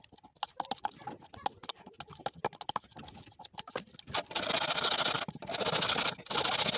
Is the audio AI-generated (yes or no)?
no